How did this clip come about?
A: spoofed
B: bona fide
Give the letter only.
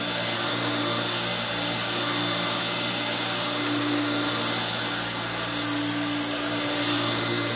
B